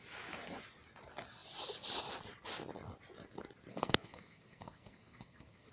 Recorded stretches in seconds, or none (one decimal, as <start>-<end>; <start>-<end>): 0.0-3.7